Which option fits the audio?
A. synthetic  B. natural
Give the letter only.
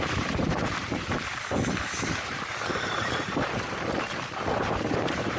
A